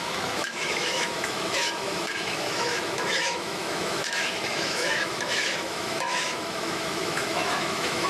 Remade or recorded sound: remade